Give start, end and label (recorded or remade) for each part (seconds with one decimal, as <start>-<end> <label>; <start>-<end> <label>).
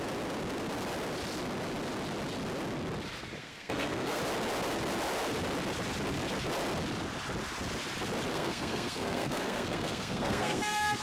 0.0-3.4 recorded; 3.4-4.2 remade; 4.2-8.3 recorded; 8.3-11.0 remade